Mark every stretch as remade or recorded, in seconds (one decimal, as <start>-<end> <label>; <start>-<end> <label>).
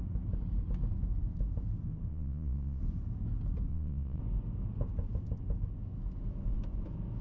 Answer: 0.0-2.1 recorded; 2.1-2.8 remade; 2.8-3.7 recorded; 3.7-4.2 remade; 4.2-7.2 recorded